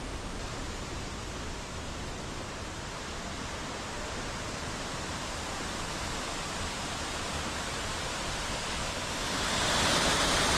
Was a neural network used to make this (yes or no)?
no